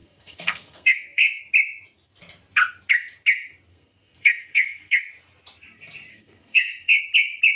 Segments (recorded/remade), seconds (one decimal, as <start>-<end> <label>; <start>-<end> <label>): 0.0-1.4 remade; 1.4-3.7 recorded; 3.7-5.0 remade; 5.0-6.1 recorded; 6.1-7.0 remade; 7.0-7.6 recorded